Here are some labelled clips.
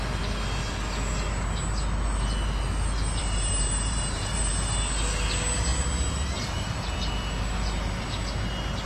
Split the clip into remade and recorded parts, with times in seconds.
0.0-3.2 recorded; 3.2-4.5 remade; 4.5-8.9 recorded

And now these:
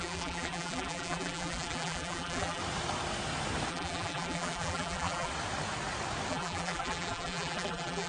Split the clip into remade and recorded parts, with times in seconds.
0.0-2.6 remade; 2.6-3.7 recorded; 3.7-5.3 remade; 5.3-6.3 recorded; 6.3-8.1 remade

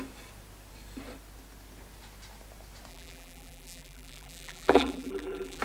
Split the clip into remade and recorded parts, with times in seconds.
0.0-2.9 recorded; 2.9-5.6 remade

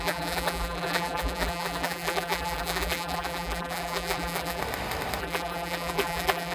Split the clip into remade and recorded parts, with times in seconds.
0.0-4.6 remade; 4.6-5.2 recorded; 5.2-6.5 remade